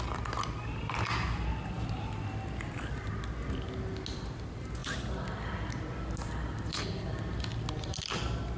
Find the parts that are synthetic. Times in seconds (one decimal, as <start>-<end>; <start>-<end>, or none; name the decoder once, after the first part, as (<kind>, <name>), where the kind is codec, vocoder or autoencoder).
none